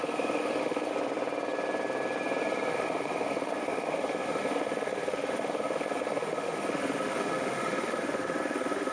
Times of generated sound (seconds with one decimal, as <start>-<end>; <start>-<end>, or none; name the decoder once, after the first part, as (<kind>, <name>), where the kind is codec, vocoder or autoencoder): 0.0-0.9 (autoencoder, DAC-VAE); 2.7-8.9